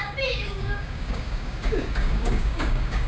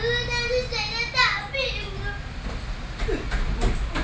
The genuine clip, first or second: second